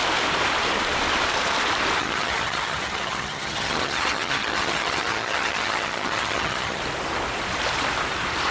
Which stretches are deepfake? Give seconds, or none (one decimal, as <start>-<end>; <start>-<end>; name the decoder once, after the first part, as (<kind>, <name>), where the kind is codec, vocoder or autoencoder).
2.0-6.8 (vocoder, HiFi-GAN)